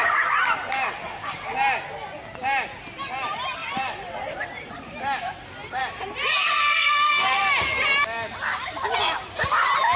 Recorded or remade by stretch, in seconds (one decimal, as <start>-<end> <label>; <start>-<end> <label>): 0.0-6.4 recorded; 6.4-7.5 remade; 7.5-10.0 recorded